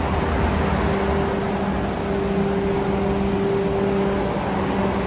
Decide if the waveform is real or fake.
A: real